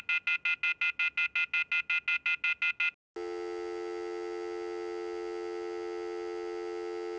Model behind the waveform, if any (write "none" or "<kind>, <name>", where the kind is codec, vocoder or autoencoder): none